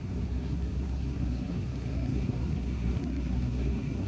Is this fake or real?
fake